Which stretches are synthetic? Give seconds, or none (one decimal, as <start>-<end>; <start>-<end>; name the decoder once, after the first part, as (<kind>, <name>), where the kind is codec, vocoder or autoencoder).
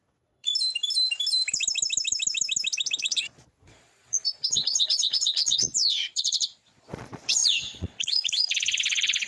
0.0-0.5 (vocoder, Vocos); 3.0-9.3